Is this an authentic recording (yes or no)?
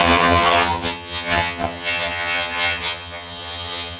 no